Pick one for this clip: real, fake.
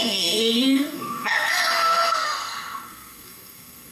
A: fake